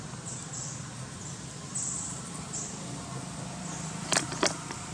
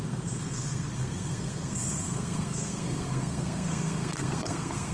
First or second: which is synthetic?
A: second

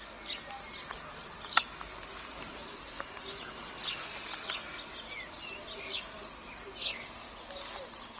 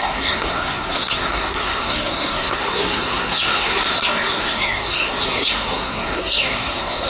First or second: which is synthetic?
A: second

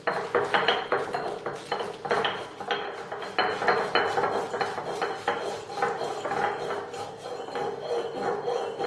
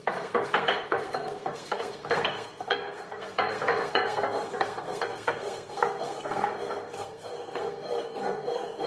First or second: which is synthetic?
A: second